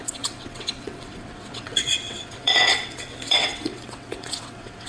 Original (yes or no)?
no